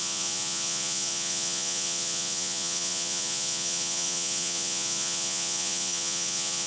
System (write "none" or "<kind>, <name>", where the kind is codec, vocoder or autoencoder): vocoder, Vocos